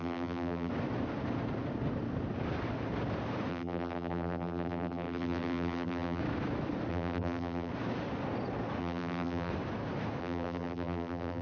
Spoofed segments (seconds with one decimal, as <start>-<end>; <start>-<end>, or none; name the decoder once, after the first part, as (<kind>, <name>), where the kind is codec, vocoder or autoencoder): 0.0-0.7 (vocoder, BigVGAN v2); 3.5-6.2; 6.9-7.7; 8.8-9.5; 10.2-11.4